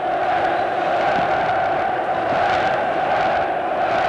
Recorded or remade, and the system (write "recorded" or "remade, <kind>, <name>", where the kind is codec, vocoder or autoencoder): recorded